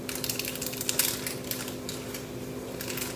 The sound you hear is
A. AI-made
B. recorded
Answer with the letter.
B